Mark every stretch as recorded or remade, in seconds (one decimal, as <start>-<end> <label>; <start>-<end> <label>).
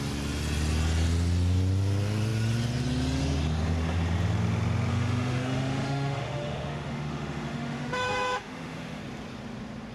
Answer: 0.0-4.9 recorded; 4.9-9.0 remade; 9.0-9.9 recorded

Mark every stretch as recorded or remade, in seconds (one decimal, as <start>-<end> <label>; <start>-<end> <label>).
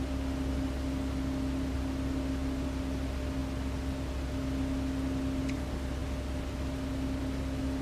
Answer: 0.0-7.8 recorded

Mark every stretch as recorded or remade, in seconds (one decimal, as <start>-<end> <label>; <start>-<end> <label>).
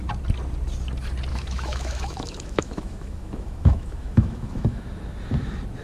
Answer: 0.0-1.3 recorded; 1.3-4.8 remade; 4.8-5.8 recorded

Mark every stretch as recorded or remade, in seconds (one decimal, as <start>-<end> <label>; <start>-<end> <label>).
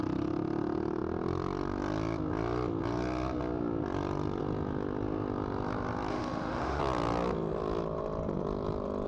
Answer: 0.0-6.1 recorded; 6.1-6.8 remade; 6.8-9.1 recorded